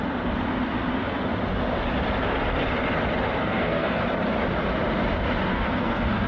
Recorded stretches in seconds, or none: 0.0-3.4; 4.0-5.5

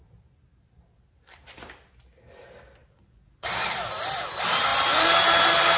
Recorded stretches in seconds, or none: 0.0-2.8; 3.5-5.8

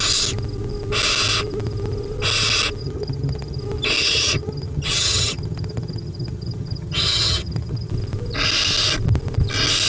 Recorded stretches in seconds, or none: 0.0-2.8; 3.6-4.0; 7.9-9.9

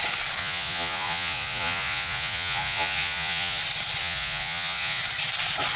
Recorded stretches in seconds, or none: 0.0-0.4; 3.6-4.0; 5.0-5.8

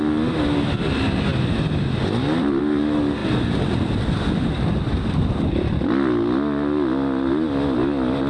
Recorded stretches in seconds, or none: 0.0-8.3

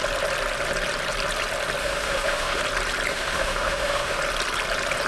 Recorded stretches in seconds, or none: 0.0-1.8; 2.6-3.1; 4.2-5.1